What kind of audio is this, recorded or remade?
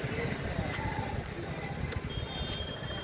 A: recorded